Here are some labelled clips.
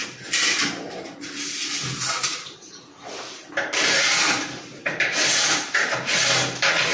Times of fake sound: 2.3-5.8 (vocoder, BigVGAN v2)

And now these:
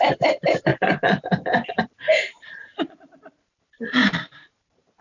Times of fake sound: 0.0-5.0 (vocoder, BigVGAN v2)

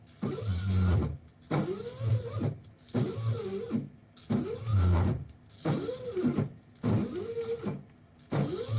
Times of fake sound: 2.1-2.9 (vocoder, BigVGAN v2); 4.7-6.6